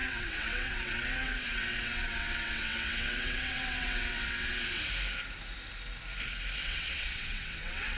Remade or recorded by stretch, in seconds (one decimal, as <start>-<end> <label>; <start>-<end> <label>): 0.0-4.8 remade; 4.8-6.6 recorded; 6.6-8.0 remade